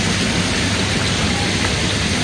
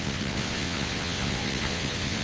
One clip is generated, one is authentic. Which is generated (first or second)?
second